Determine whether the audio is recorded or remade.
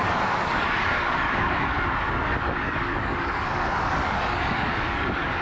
remade